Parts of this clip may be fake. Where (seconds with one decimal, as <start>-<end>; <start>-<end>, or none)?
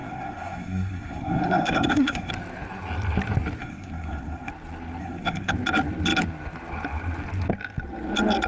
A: 0.0-2.3; 3.6-4.5; 5.0-5.5